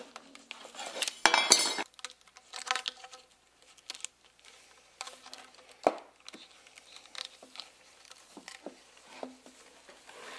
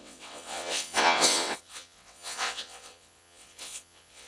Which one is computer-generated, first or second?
second